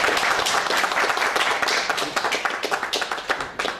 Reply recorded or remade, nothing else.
remade